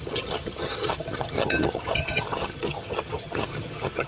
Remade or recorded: remade